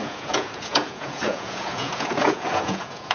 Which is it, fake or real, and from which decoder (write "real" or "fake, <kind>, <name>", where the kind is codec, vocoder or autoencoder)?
fake, vocoder, Vocos